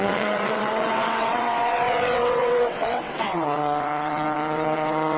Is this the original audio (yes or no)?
no